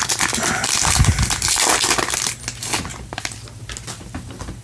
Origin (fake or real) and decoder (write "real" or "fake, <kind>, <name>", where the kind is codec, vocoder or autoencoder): real